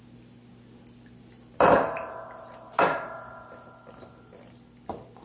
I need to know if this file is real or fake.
real